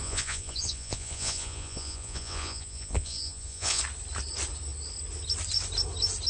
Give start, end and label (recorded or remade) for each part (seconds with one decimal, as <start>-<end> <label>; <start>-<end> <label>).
0.0-3.8 remade; 3.8-6.3 recorded